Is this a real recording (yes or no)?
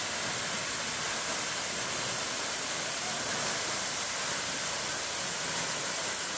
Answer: yes